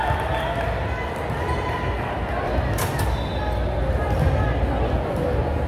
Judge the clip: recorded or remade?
recorded